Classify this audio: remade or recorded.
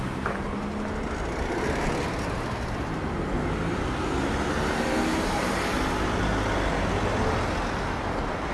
recorded